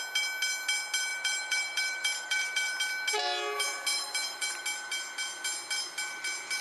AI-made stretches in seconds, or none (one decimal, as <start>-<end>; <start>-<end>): 1.1-2.8; 3.9-4.6